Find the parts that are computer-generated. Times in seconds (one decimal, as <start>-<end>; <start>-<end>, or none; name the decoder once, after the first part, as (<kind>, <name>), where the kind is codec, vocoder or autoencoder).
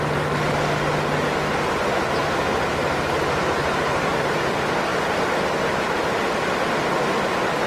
2.2-4.5 (vocoder, BigVGAN v2)